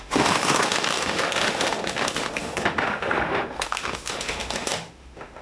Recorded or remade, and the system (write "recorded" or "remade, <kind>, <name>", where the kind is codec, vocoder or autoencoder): remade, autoencoder, DAC-VAE